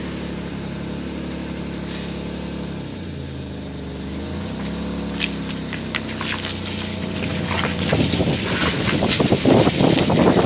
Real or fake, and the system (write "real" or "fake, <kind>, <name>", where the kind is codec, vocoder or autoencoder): real